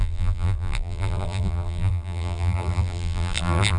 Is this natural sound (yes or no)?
no